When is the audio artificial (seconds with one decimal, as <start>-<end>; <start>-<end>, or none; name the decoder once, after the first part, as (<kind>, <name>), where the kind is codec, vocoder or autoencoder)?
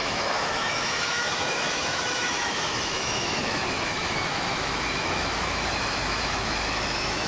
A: 0.0-7.3 (autoencoder, DAC-VAE)